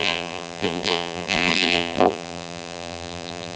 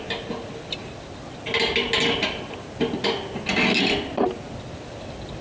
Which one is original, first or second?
second